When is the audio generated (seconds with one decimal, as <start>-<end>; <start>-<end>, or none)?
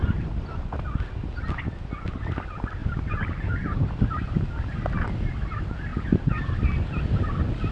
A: 2.8-4.0; 5.9-6.5